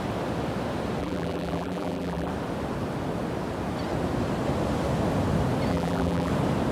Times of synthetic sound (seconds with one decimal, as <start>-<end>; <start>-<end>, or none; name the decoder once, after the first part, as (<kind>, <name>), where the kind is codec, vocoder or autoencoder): 1.0-2.3 (vocoder, BigVGAN v2); 5.7-6.3

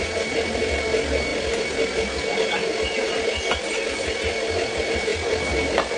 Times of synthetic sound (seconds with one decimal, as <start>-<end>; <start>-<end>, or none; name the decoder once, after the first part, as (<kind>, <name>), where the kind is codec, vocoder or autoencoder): 5.1-6.0 (vocoder, BigVGAN v2)

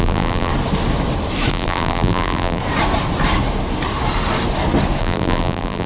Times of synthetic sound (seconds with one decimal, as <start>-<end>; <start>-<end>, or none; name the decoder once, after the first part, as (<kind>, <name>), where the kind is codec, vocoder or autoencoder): 0.0-0.5 (vocoder, BigVGAN v2); 1.5-2.6; 5.0-5.9

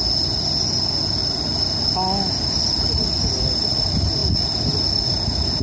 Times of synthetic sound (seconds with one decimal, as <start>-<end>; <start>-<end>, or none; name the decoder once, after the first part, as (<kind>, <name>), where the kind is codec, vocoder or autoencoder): 1.2-1.8 (vocoder, BigVGAN v2)

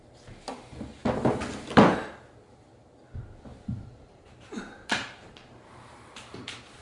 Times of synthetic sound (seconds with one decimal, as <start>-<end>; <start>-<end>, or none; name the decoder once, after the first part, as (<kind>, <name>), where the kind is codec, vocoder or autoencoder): 3.5-6.8 (vocoder, BigVGAN v2)

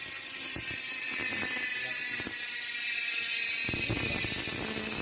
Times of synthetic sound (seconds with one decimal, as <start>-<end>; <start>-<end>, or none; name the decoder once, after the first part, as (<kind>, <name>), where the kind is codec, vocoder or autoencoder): none

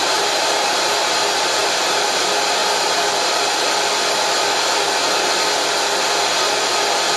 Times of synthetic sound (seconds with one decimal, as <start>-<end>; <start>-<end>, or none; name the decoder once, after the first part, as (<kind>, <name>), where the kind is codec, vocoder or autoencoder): 0.0-2.2 (vocoder, BigVGAN v2)